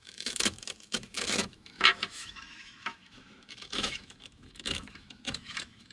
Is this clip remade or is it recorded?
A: remade